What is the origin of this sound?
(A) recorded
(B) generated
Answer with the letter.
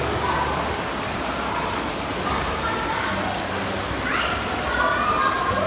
A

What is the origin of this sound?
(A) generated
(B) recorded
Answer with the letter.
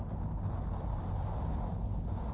B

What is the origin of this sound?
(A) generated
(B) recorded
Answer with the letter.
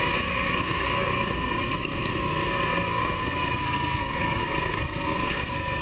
A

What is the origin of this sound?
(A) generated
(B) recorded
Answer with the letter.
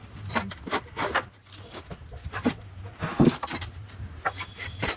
A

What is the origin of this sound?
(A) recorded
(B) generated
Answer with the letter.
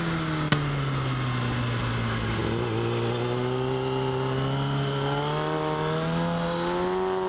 A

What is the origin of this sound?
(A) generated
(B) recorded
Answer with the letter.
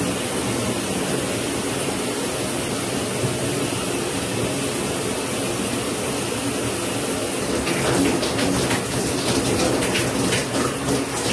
B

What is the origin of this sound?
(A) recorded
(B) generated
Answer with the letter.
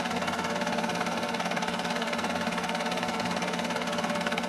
B